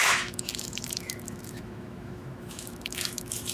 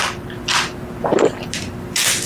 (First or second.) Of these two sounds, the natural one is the second